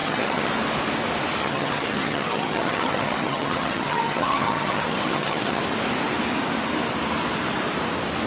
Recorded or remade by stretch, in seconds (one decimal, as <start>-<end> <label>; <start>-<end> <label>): 0.0-0.5 remade; 0.5-1.4 recorded; 1.4-5.6 remade; 5.6-8.3 recorded